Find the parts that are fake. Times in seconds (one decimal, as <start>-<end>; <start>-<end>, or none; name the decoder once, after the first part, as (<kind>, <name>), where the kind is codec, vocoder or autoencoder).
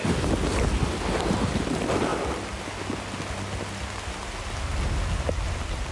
none